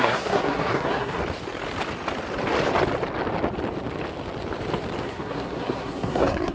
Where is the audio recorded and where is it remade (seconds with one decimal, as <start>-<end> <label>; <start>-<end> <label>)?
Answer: 0.0-1.2 remade; 1.2-5.0 recorded; 5.0-6.5 remade